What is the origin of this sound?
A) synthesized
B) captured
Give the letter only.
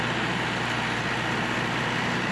B